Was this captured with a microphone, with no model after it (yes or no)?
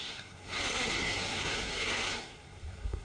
no